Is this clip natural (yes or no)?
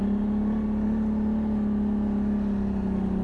yes